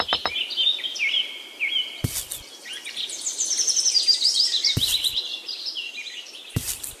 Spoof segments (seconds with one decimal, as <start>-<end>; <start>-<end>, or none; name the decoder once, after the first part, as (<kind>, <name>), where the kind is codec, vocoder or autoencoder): 0.0-7.0 (vocoder, BigVGAN v2)